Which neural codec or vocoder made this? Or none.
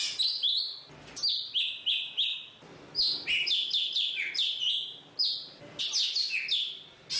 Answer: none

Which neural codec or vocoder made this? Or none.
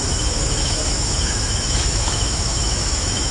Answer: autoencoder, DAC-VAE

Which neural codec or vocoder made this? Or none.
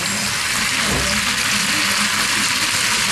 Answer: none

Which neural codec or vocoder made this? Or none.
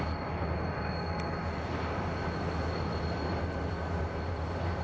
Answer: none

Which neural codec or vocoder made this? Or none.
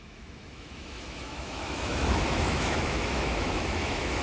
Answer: autoencoder, DAC-VAE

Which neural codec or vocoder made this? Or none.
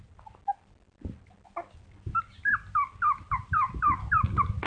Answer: none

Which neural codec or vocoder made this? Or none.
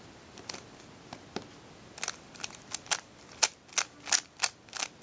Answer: none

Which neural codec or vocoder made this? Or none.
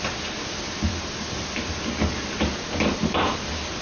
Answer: none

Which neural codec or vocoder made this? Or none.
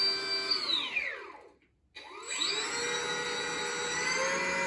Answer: none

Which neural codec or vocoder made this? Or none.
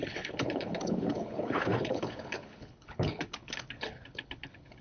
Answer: codec, HILCodec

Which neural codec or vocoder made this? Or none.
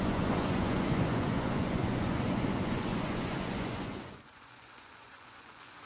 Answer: vocoder, Vocos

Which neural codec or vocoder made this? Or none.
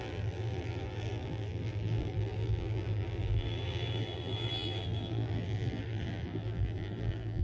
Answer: vocoder, BigVGAN v2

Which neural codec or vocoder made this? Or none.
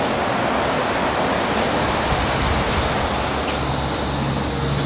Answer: none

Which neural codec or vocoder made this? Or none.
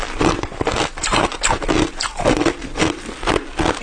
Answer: none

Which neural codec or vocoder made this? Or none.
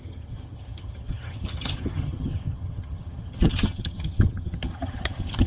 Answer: vocoder, HiFi-GAN